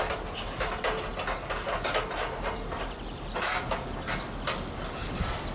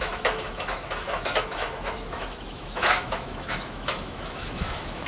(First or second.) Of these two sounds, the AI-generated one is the second